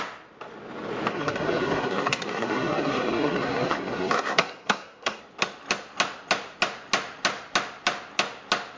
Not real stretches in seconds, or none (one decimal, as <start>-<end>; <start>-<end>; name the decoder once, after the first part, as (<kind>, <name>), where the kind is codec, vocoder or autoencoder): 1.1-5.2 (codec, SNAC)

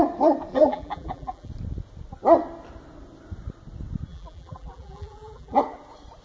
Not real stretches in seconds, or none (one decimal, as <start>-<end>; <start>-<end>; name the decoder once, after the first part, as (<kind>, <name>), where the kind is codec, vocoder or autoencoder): 0.5-1.5 (vocoder, BigVGAN v2); 4.1-5.6

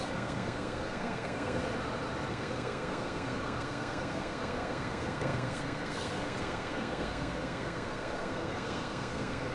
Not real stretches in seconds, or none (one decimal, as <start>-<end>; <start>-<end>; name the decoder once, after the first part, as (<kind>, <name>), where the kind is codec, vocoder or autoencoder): 0.0-1.6 (codec, SNAC); 2.3-9.5

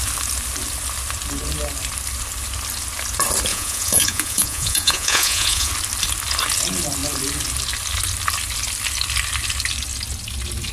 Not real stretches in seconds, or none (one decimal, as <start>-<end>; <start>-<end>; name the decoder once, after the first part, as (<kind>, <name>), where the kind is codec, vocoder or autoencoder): 3.5-5.7 (vocoder, Vocos)

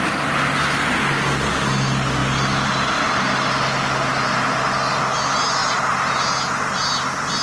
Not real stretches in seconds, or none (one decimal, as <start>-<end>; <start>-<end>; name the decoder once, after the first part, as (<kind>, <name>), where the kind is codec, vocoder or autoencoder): none